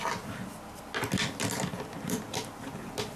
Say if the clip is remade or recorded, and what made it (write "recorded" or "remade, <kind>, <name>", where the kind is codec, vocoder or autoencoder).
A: recorded